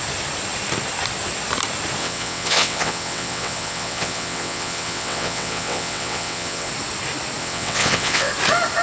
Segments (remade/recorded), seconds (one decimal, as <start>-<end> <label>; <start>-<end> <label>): 0.0-2.0 recorded; 2.0-6.7 remade; 6.7-7.4 recorded; 7.4-8.3 remade; 8.3-8.8 recorded